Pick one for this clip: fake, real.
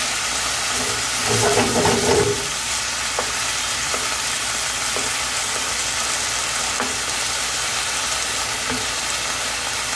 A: real